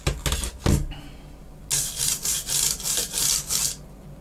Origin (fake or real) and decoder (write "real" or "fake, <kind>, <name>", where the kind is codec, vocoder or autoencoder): real